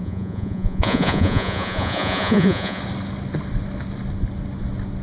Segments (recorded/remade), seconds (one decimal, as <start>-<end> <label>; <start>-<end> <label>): 0.0-2.8 remade; 2.8-5.0 recorded

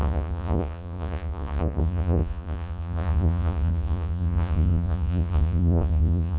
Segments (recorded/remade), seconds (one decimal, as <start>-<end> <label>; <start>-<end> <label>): 0.0-6.4 remade

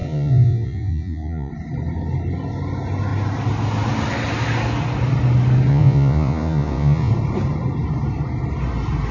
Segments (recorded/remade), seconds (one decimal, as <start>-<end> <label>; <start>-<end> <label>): 0.0-1.5 remade; 1.5-5.7 recorded; 5.7-7.1 remade; 7.1-9.1 recorded

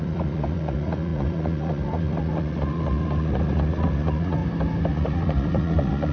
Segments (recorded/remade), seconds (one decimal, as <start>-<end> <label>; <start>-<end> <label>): 0.0-4.4 remade; 4.4-4.9 recorded; 4.9-6.1 remade

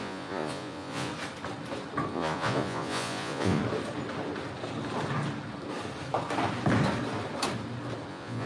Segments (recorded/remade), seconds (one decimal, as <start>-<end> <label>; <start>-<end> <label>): 0.0-1.1 remade; 1.1-2.1 recorded; 2.1-3.6 remade; 3.6-8.1 recorded; 8.1-8.5 remade